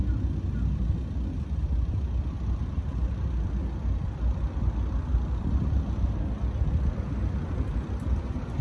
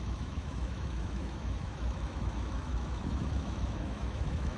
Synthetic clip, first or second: second